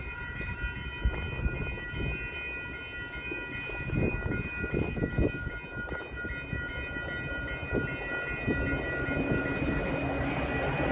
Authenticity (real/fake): real